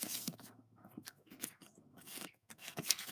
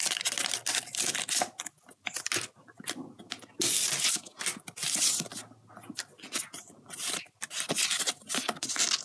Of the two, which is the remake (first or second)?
first